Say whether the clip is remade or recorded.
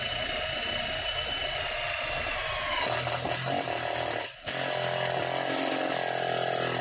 recorded